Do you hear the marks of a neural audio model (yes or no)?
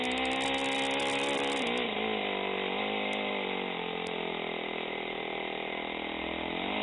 no